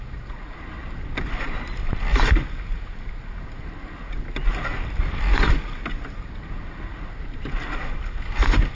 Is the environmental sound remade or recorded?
recorded